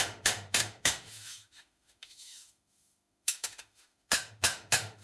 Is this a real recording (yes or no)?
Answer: no